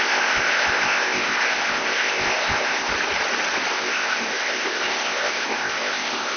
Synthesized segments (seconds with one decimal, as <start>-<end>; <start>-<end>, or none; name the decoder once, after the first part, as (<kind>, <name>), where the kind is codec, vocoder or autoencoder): 0.0-2.9 (codec, ZipCodec); 3.7-6.4